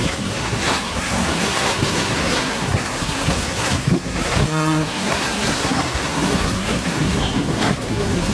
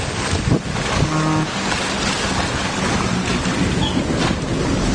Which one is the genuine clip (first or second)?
second